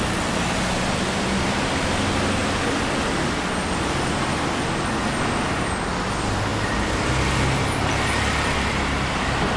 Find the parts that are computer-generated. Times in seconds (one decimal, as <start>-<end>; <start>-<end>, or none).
none